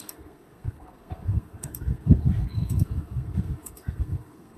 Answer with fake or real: fake